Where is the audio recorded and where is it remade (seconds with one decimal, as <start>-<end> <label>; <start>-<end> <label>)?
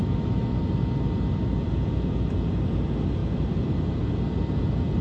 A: 0.0-0.6 remade; 0.6-5.0 recorded